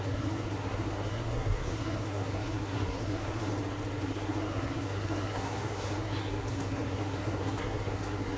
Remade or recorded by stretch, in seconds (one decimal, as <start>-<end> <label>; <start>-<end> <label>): 0.0-3.5 remade; 3.5-4.0 recorded; 4.0-8.4 remade